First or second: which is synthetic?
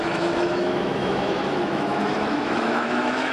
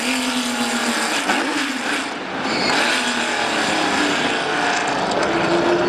first